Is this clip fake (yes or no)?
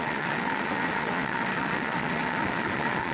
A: yes